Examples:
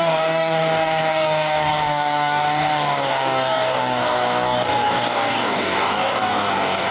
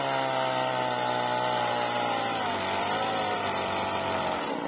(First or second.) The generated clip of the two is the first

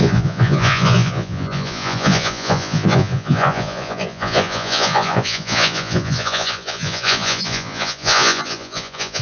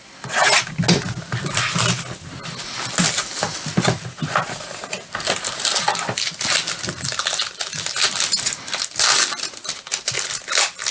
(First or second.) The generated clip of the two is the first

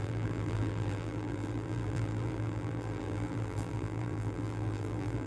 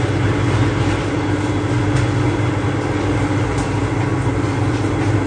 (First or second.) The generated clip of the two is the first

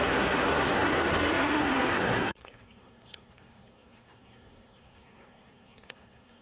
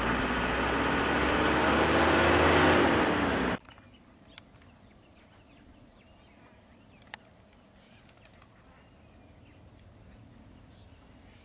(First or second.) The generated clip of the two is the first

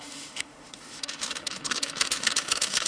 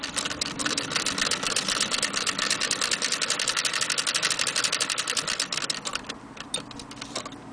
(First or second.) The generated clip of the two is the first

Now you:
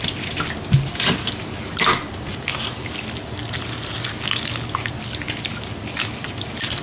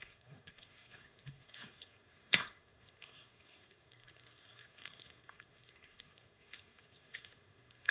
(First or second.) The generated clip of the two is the second